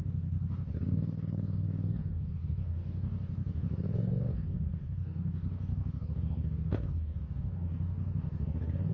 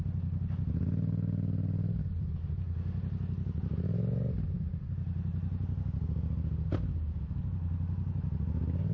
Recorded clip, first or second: second